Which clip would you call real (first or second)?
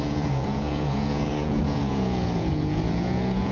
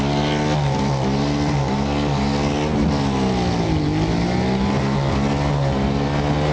second